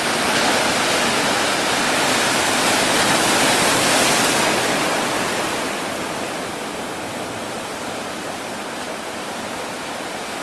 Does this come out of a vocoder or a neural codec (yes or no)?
no